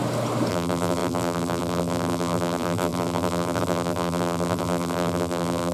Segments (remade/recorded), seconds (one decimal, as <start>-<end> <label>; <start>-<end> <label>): 0.0-0.5 recorded; 0.5-5.7 remade